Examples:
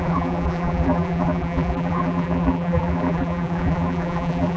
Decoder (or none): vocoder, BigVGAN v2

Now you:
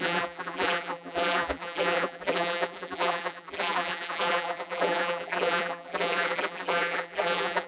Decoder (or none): vocoder, BigVGAN v2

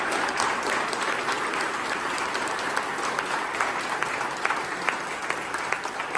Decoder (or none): none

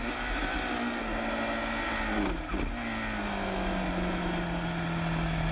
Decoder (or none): none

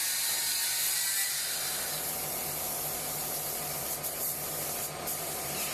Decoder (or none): vocoder, BigVGAN v2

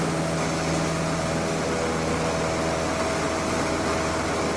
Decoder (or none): none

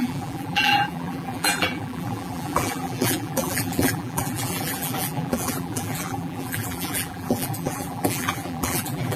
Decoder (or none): vocoder, BigVGAN v2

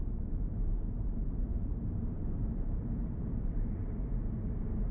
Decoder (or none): vocoder, BigVGAN v2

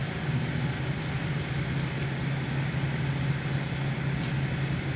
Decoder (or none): none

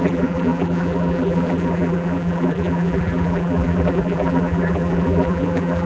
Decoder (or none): vocoder, BigVGAN v2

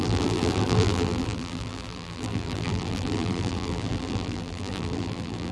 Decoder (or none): vocoder, BigVGAN v2